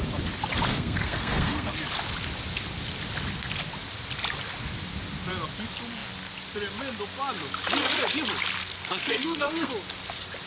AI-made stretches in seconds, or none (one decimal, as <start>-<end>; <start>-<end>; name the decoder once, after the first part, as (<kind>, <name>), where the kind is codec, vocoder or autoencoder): 0.7-1.7 (codec, SNAC); 8.6-9.7